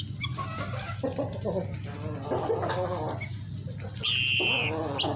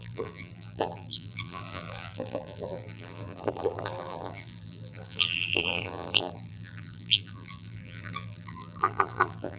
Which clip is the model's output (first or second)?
second